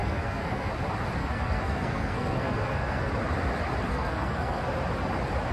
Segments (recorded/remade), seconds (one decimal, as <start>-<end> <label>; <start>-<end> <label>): 0.0-0.7 remade; 0.7-1.2 recorded; 1.2-3.1 remade; 3.1-3.9 recorded; 3.9-4.7 remade; 4.7-5.5 recorded